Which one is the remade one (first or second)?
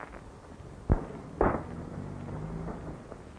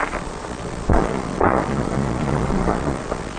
second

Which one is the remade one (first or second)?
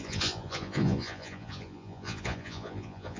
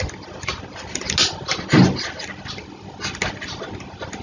first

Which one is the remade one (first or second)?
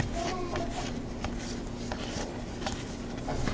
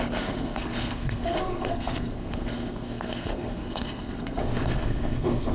second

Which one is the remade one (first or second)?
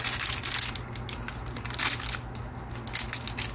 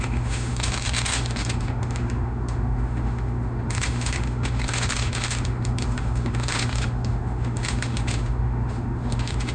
second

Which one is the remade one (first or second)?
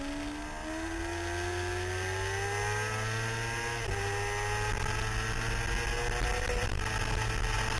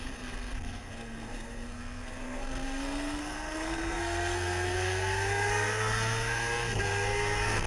second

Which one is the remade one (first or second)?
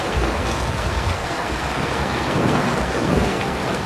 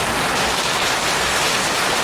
first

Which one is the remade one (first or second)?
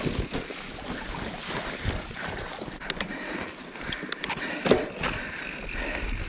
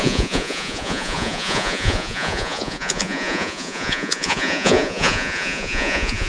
second